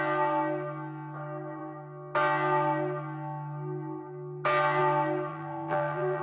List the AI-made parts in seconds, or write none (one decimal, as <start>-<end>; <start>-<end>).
5.3-6.2